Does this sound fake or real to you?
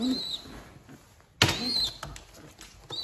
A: real